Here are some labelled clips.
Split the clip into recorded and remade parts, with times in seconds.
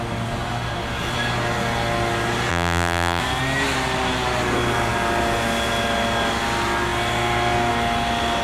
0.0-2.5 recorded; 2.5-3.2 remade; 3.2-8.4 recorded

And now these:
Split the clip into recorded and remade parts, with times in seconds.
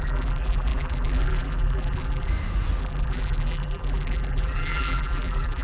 0.0-2.3 remade; 2.3-2.8 recorded; 2.8-5.6 remade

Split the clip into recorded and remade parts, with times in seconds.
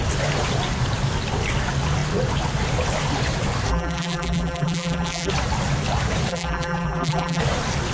0.0-3.7 recorded; 3.7-5.3 remade; 5.3-6.3 recorded; 6.3-7.4 remade; 7.4-7.9 recorded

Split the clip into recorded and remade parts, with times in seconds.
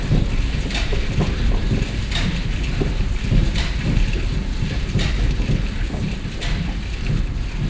0.0-3.4 recorded; 3.4-7.3 remade; 7.3-7.7 recorded